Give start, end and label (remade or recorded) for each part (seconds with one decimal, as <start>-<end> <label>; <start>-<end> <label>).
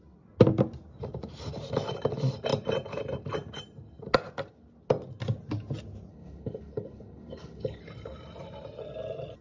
0.0-6.1 recorded; 6.1-7.8 remade; 7.8-9.4 recorded